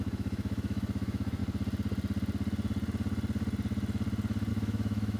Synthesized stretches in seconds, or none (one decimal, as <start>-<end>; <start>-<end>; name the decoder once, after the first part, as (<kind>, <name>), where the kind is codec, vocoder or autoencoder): 0.0-1.4 (autoencoder, DAC-VAE); 4.5-5.2